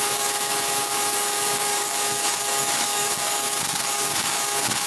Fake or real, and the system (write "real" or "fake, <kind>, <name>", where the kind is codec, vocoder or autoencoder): fake, codec, DAC